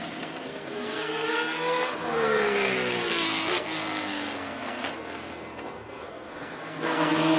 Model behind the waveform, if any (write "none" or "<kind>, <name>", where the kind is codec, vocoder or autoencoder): codec, SNAC